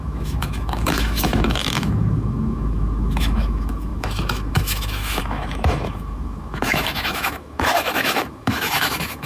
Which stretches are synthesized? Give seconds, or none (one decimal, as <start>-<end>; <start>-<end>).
0.0-9.3